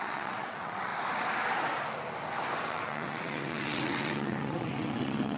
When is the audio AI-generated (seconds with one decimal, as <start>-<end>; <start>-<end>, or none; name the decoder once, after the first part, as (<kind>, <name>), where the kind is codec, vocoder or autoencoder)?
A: 0.0-0.9 (vocoder, WaveNeXt); 2.7-5.4